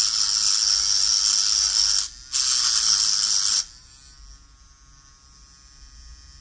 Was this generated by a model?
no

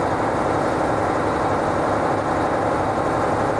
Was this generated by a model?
no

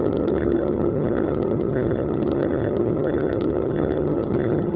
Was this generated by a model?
yes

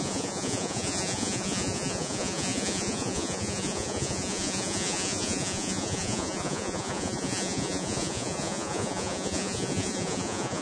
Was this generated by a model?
yes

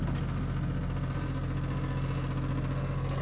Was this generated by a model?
no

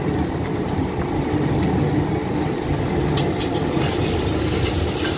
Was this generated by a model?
no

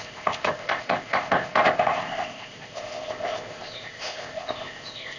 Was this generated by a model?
yes